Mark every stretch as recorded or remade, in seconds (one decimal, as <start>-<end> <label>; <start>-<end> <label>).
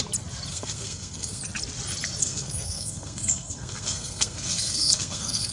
0.0-0.5 recorded; 0.5-1.4 remade; 1.4-2.2 recorded; 2.2-5.5 remade